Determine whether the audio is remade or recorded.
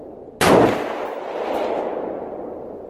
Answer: recorded